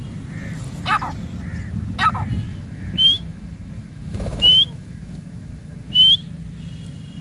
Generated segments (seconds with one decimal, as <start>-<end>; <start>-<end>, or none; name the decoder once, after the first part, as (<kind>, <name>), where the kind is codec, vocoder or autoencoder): 2.5-5.9 (autoencoder, DAC-VAE)